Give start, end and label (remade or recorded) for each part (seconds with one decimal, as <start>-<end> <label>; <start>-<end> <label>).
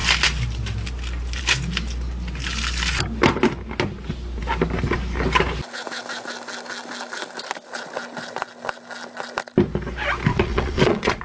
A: 0.0-10.3 recorded; 10.3-11.2 remade